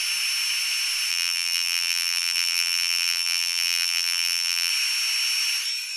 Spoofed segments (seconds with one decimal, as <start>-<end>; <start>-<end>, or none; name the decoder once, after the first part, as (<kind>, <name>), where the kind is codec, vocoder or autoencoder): 1.1-4.7 (vocoder, BigVGAN v2)